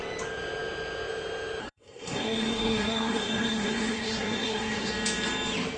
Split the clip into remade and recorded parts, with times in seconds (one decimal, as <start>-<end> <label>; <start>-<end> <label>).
0.0-1.6 recorded; 1.6-4.9 remade; 4.9-5.8 recorded